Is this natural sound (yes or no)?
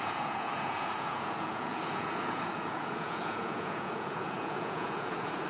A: no